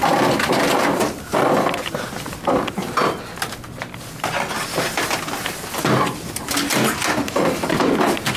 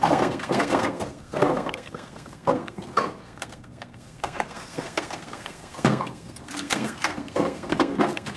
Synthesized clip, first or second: second